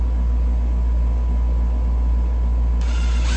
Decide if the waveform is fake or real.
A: real